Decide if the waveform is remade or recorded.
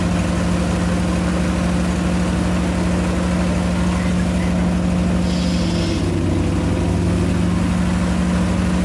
recorded